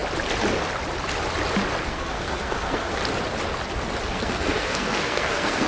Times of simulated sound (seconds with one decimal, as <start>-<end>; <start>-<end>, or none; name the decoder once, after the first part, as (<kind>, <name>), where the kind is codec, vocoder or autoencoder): 1.8-3.0 (codec, SNAC); 4.1-5.7